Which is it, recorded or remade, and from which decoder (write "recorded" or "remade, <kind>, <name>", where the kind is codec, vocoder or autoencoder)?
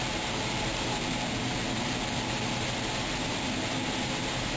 recorded